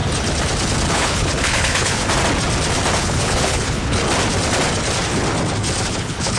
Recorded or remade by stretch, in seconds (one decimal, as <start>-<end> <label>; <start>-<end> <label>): 0.0-0.9 recorded; 0.9-2.0 remade; 2.0-3.0 recorded; 3.0-4.0 remade; 4.0-5.9 recorded; 5.9-6.4 remade